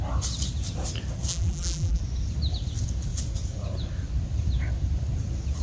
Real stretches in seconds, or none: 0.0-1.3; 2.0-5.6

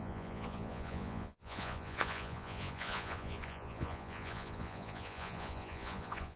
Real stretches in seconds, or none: none

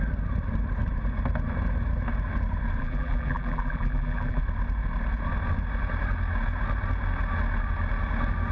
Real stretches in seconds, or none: 0.0-2.8; 4.4-8.5

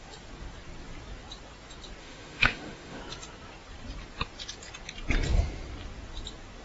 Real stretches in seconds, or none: 0.0-2.0; 3.0-6.6

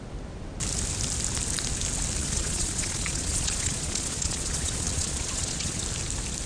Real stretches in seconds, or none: 0.0-2.2; 5.8-6.5

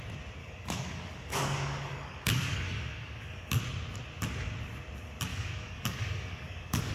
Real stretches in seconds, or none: 0.0-0.4; 3.6-5.3